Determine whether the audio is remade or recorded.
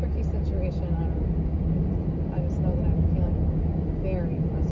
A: recorded